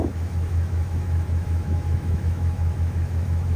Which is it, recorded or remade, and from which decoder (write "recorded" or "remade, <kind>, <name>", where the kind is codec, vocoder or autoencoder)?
remade, autoencoder, DAC-VAE